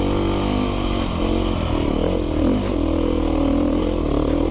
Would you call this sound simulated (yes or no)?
no